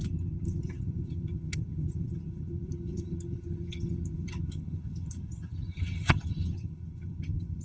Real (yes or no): no